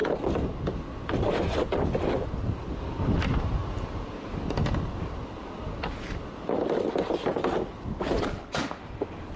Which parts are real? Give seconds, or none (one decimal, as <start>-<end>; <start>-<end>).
0.0-9.4